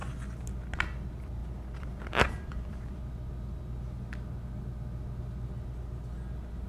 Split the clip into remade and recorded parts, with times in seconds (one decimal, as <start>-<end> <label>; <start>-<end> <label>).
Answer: 0.0-1.4 recorded; 1.4-3.0 remade; 3.0-6.7 recorded